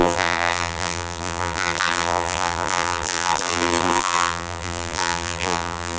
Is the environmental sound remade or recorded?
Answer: remade